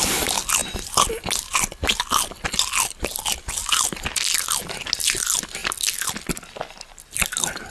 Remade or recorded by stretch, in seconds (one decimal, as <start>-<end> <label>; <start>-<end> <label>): 0.0-7.7 recorded